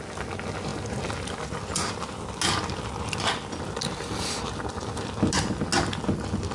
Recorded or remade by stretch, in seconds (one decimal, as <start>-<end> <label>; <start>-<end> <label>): 0.0-6.5 recorded